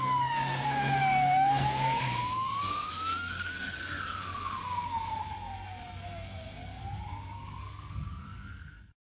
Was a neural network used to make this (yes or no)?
yes